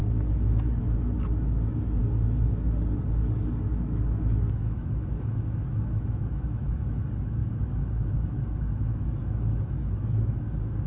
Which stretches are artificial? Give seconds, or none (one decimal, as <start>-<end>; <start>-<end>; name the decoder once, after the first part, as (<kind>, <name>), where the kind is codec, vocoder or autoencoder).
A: 0.8-2.0 (autoencoder, DAC-VAE); 3.7-10.9